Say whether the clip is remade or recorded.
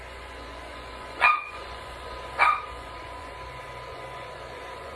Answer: remade